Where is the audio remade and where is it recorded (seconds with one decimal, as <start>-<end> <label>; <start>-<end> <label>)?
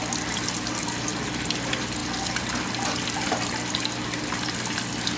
0.0-5.2 recorded